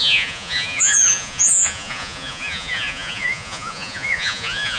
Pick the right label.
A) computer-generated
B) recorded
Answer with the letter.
A